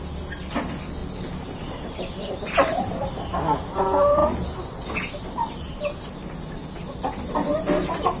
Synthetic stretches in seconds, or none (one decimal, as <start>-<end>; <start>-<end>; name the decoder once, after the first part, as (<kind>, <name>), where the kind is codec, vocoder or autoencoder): none